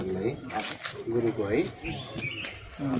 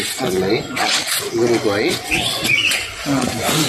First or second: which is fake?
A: second